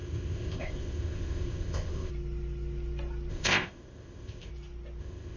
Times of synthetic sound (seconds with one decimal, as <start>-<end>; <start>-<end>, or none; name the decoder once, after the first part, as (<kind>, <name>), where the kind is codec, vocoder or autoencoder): 0.0-2.1 (codec, ZipCodec); 3.3-4.5; 5.0-5.4